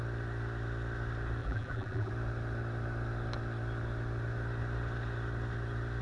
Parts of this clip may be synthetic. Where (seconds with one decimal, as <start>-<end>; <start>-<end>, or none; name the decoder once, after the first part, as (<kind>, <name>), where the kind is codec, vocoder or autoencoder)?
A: 1.4-2.1 (vocoder, BigVGAN v2)